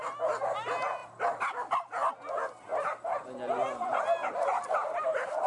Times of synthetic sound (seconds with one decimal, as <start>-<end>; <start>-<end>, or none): 1.0-2.1; 2.7-5.5